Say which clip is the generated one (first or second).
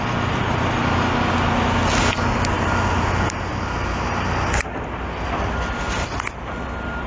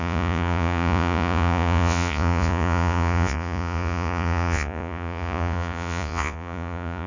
second